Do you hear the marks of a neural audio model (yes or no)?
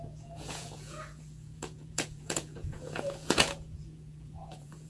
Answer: yes